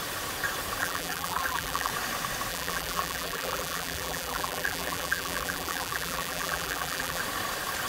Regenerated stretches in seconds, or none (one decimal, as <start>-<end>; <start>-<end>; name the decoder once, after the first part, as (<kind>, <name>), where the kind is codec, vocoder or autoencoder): 0.8-1.9 (vocoder, BigVGAN v2); 2.5-7.2